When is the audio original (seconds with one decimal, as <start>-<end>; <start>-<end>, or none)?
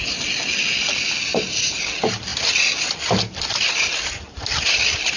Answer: 0.0-5.2